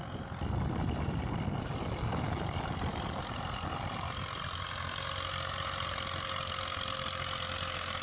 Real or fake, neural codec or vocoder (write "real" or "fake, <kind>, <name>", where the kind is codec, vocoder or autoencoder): real